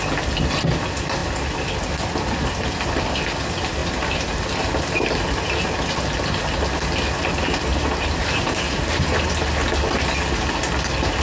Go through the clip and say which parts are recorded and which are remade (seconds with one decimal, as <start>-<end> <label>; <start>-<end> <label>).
0.0-3.8 recorded; 3.8-4.4 remade; 4.4-7.7 recorded; 7.7-9.3 remade; 9.3-11.2 recorded